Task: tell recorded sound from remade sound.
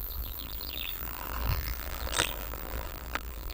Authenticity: remade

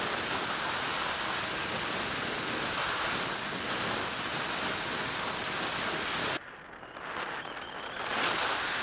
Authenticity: recorded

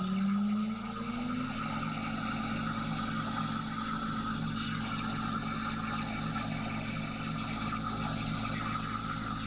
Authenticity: recorded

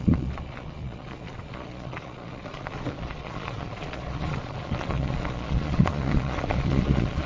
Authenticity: remade